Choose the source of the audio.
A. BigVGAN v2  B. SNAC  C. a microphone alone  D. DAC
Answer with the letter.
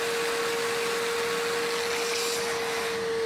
C